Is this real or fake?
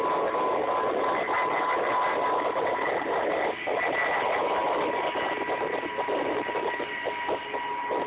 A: real